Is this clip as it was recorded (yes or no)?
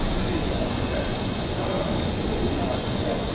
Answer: no